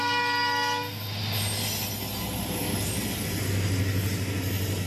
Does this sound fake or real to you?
real